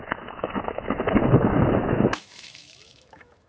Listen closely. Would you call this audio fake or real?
fake